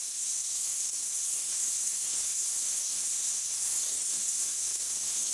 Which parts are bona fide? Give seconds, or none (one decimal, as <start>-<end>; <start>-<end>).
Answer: none